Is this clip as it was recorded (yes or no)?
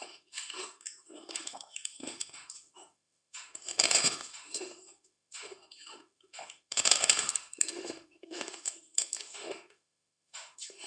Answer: no